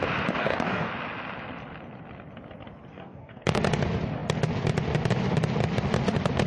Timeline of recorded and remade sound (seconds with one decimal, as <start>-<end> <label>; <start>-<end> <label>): 0.0-0.4 recorded; 0.4-0.9 remade; 0.9-2.9 recorded; 2.9-3.6 remade; 3.6-6.5 recorded

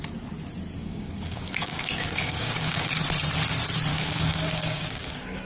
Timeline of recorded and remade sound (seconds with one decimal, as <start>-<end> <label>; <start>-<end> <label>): 0.0-0.8 recorded; 0.8-2.9 remade; 2.9-3.9 recorded; 3.9-5.4 remade

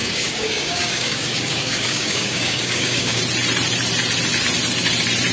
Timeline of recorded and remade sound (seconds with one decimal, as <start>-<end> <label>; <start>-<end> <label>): 0.0-3.2 remade; 3.2-5.3 recorded

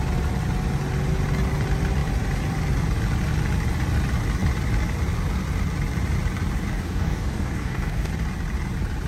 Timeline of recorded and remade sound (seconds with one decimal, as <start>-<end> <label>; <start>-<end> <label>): 0.0-6.7 recorded; 6.7-8.1 remade; 8.1-9.1 recorded

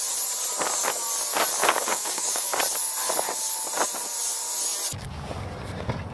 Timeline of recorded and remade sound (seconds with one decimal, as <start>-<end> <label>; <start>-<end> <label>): 0.0-1.6 recorded; 1.6-2.6 remade; 2.6-6.1 recorded

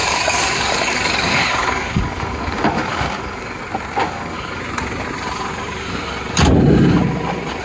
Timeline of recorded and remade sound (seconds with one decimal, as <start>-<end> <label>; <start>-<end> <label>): 0.0-3.6 remade; 3.6-4.0 recorded; 4.0-4.6 remade; 4.6-7.6 recorded

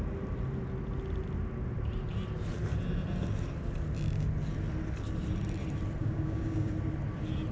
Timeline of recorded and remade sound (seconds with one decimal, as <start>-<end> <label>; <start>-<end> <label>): 0.0-6.0 recorded; 6.0-6.7 remade; 6.7-7.5 recorded

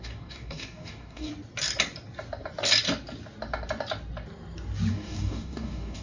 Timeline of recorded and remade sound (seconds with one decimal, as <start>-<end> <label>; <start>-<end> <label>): 0.0-1.3 remade; 1.3-4.9 recorded; 4.9-6.0 remade